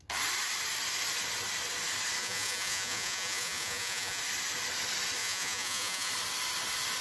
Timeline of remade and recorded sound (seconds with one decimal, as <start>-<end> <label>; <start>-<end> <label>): 0.0-2.2 recorded; 2.2-4.2 remade; 4.2-5.2 recorded; 5.2-6.1 remade; 6.1-7.0 recorded